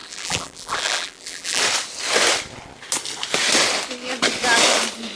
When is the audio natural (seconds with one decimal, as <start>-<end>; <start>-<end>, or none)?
1.6-5.2